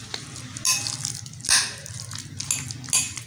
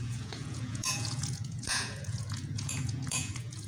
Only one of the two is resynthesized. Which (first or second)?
second